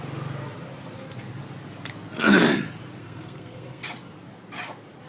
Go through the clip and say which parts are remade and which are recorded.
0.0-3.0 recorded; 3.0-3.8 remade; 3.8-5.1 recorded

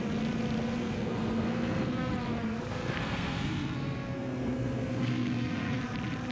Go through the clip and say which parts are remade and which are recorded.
0.0-0.8 recorded; 0.8-2.1 remade; 2.1-2.7 recorded; 2.7-5.8 remade; 5.8-6.3 recorded

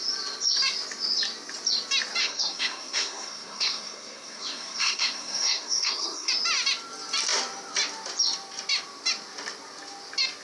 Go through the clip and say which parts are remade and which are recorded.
0.0-2.2 recorded; 2.2-6.3 remade; 6.3-10.4 recorded